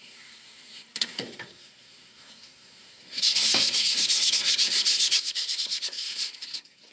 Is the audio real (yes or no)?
no